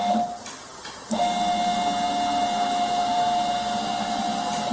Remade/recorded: recorded